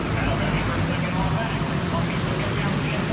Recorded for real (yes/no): yes